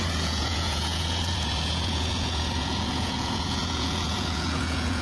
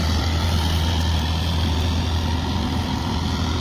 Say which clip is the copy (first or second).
first